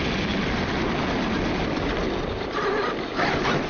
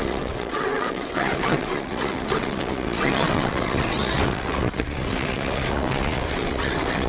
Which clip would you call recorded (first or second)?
first